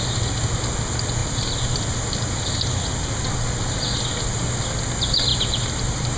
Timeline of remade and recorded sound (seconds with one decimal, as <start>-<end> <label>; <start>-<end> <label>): 0.0-6.2 recorded